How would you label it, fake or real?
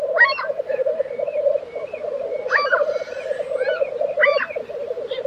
real